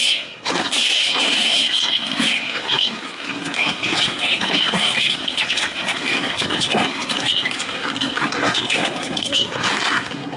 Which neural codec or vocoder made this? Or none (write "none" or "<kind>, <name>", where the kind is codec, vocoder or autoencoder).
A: codec, SNAC